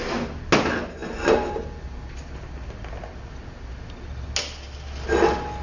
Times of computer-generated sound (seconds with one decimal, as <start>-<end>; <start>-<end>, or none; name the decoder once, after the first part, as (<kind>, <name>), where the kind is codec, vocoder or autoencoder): none